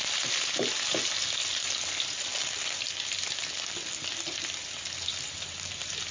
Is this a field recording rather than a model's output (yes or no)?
yes